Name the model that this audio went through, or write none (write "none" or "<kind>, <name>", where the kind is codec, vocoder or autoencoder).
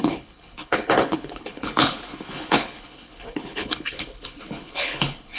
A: codec, HILCodec